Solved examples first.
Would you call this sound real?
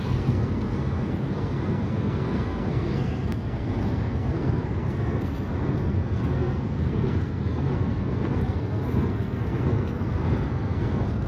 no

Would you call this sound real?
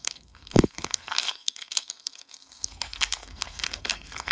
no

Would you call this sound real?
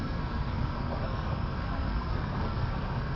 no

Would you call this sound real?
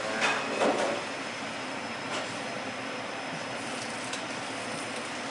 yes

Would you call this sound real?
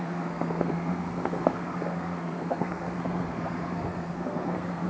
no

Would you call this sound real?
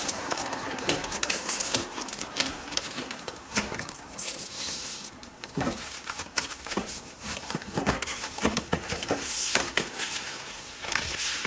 no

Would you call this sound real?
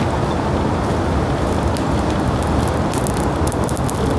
yes